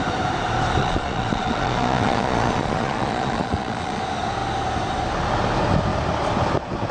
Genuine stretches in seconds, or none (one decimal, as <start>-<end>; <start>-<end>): 0.0-0.8; 4.0-6.9